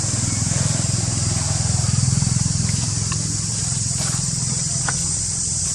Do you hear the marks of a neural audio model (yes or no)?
yes